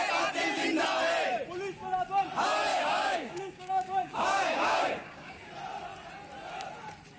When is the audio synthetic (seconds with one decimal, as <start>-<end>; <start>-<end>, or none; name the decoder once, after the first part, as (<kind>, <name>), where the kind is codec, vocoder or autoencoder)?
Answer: 2.7-5.5 (codec, DAC)